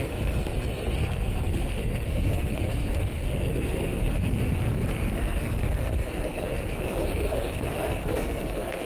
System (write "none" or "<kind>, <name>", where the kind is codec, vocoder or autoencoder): codec, SNAC